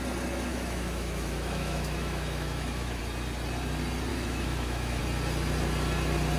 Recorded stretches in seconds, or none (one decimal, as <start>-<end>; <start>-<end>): 0.0-0.5; 3.0-4.1; 5.0-6.4